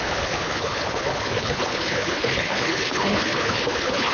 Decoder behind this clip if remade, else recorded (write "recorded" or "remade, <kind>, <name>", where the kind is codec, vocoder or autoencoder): remade, codec, HILCodec